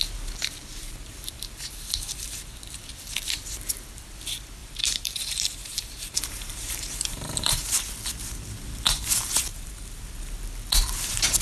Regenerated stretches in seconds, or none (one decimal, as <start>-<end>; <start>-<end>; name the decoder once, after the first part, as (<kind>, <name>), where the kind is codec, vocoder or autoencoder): 0.7-2.5 (vocoder, BigVGAN v2); 4.6-7.7; 9.5-10.0